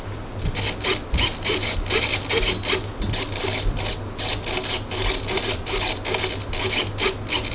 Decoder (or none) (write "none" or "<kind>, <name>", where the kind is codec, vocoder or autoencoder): none